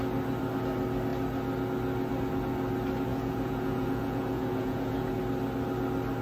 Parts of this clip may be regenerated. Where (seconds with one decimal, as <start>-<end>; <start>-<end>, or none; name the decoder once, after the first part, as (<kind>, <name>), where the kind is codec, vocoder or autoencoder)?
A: 3.1-5.2 (vocoder, Vocos)